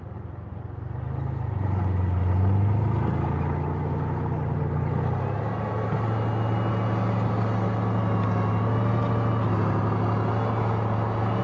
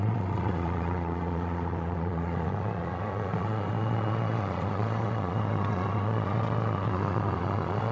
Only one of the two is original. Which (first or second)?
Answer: first